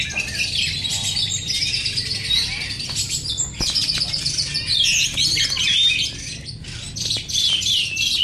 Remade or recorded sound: recorded